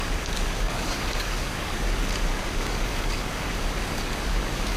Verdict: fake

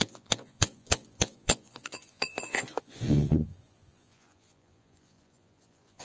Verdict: fake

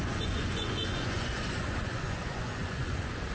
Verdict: fake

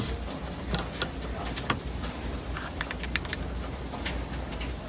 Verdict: real